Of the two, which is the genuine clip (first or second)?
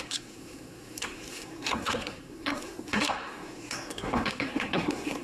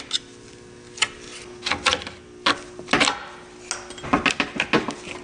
second